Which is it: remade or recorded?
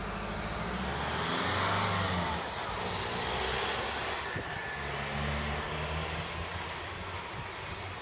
recorded